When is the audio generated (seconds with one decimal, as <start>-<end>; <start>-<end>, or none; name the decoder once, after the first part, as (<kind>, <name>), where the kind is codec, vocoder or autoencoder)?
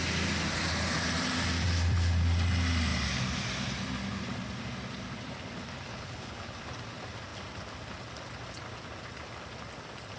5.9-6.6 (codec, HILCodec)